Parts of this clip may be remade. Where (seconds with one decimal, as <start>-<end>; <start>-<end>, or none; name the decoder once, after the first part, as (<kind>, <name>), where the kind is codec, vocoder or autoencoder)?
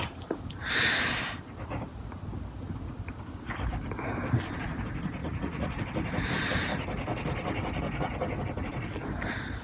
5.2-5.8 (vocoder, Vocos)